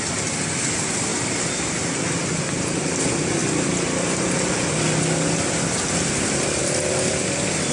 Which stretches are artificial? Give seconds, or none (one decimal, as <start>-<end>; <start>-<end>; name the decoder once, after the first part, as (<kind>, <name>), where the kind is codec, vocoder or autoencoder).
none